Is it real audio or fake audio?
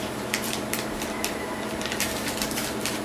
fake